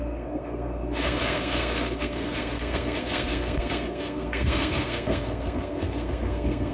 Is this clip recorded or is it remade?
remade